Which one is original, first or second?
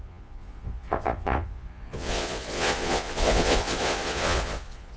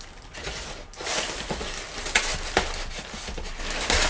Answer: second